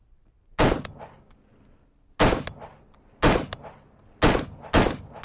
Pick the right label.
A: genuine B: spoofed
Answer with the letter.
A